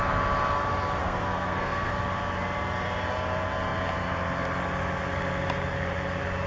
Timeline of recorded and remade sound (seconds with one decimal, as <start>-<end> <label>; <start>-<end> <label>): 0.0-1.0 recorded; 1.0-1.9 remade; 1.9-6.5 recorded